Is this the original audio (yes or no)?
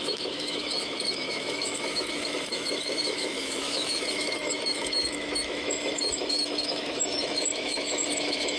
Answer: no